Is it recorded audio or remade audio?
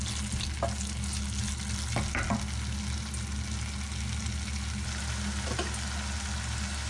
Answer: recorded